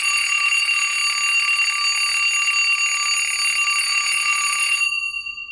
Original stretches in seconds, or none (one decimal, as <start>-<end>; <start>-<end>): 1.0-3.8